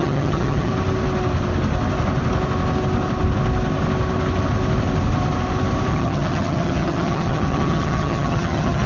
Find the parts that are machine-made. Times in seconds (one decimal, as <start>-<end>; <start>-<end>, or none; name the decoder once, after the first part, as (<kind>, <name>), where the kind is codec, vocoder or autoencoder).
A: 0.0-0.7 (vocoder, HiFi-GAN); 5.9-8.9